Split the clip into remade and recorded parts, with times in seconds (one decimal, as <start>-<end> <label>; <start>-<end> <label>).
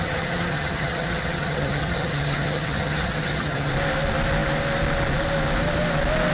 0.0-3.7 remade; 3.7-6.3 recorded